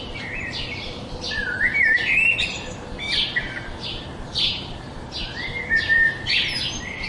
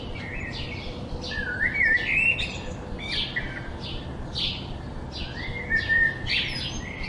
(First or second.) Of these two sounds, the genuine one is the second